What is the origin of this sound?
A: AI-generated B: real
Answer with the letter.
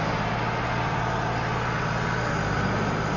B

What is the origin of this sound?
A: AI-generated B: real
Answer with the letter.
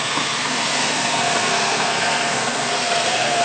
A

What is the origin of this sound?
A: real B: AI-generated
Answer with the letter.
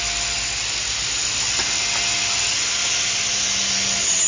A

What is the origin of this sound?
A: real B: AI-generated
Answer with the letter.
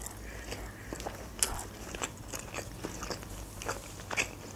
A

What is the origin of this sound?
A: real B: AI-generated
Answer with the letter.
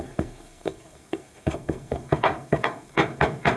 B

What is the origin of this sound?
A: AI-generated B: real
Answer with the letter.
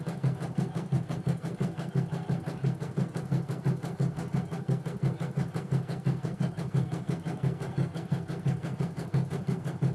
A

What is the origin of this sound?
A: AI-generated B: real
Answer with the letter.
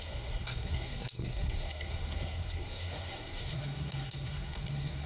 A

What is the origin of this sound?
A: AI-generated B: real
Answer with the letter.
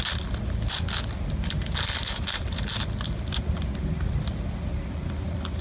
B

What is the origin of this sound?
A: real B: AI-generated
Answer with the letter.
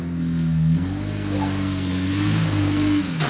B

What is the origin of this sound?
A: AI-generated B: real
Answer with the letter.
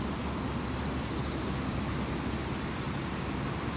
B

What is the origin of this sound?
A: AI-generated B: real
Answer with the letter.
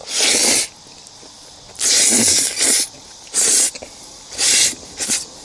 B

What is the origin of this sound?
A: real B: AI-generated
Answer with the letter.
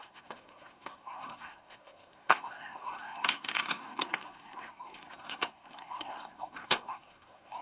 B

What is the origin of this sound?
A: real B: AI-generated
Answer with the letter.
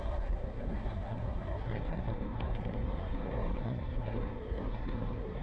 B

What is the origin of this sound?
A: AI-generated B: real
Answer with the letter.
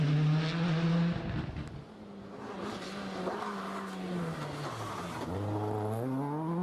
B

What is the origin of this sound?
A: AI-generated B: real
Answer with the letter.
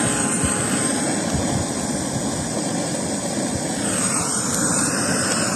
B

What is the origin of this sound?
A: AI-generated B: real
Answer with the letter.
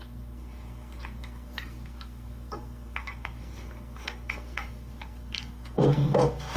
A